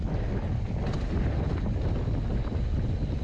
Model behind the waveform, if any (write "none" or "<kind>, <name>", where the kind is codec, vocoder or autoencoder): none